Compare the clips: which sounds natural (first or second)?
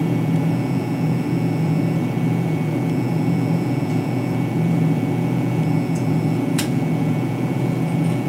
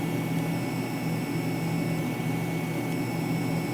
second